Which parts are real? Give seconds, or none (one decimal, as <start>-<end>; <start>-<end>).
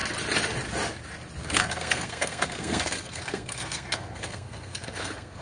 0.0-1.4